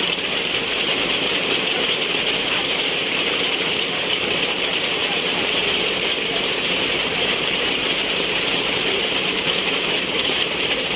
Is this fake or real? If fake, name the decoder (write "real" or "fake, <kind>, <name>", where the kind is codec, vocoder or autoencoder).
fake, vocoder, BigVGAN v2